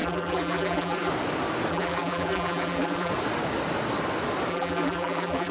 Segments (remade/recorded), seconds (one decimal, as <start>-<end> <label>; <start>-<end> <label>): 0.0-1.1 remade; 1.1-1.7 recorded; 1.7-3.1 remade; 3.1-4.5 recorded; 4.5-5.5 remade